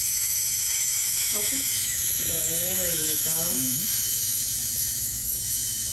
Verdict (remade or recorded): remade